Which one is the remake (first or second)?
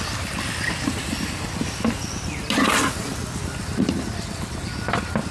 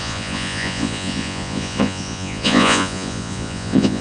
second